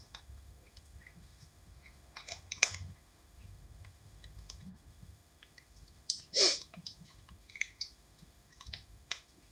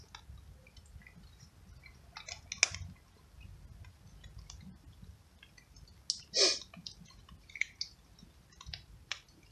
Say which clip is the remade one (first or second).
first